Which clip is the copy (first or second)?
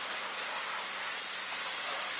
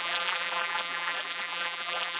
second